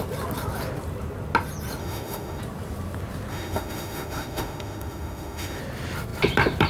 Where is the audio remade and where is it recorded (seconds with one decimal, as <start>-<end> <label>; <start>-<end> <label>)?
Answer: 0.0-1.8 recorded; 1.8-2.4 remade; 2.4-3.3 recorded; 3.3-5.6 remade; 5.6-6.7 recorded